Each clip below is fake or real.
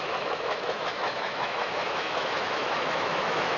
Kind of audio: fake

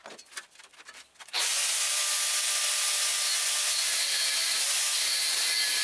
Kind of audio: real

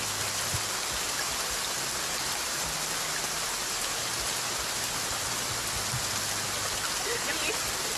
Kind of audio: real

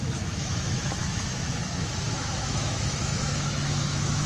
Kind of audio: fake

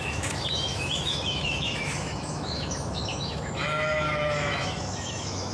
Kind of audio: fake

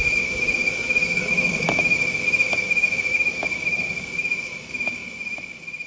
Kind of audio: fake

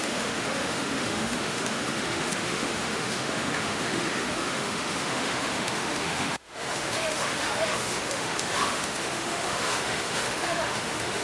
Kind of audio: fake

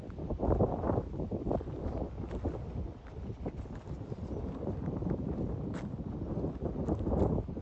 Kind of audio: real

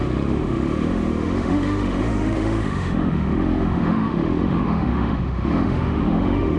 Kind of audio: fake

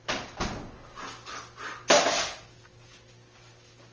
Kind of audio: real